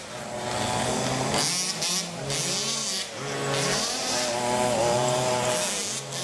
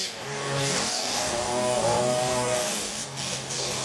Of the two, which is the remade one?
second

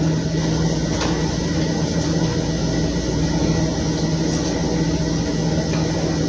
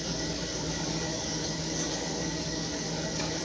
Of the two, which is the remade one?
second